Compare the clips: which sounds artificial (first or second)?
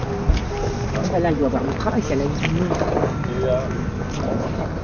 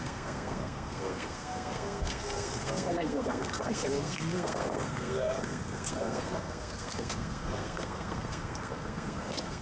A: second